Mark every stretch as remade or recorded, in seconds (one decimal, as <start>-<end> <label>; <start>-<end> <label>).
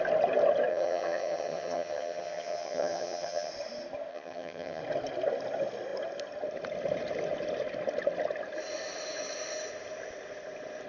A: 0.0-0.7 recorded; 0.7-3.5 remade; 3.5-4.1 recorded; 4.1-4.8 remade; 4.8-10.9 recorded